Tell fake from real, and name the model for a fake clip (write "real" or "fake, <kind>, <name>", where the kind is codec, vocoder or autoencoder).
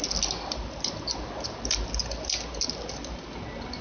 real